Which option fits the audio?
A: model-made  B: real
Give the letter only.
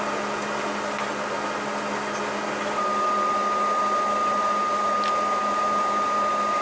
B